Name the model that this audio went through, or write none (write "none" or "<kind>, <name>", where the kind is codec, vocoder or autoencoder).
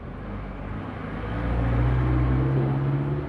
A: none